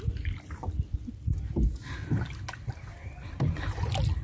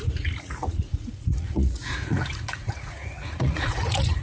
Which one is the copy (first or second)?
second